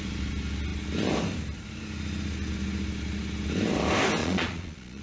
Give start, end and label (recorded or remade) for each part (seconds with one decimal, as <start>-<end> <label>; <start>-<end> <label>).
0.0-4.2 recorded; 4.2-5.0 remade